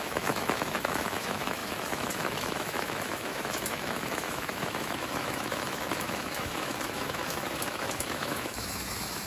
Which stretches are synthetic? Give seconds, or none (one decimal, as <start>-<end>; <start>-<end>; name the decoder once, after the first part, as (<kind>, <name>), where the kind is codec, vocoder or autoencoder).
0.0-9.3 (autoencoder, DAC-VAE)